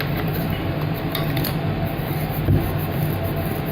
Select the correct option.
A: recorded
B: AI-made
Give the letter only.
A